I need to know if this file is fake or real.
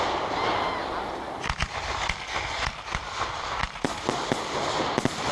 real